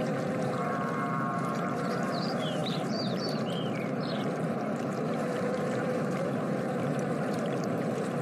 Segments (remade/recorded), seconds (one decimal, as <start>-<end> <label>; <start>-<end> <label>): 0.0-8.2 remade